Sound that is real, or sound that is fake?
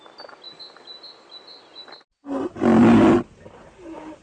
real